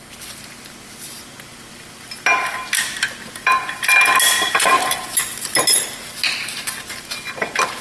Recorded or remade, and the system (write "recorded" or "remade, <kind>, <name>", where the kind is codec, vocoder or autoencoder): recorded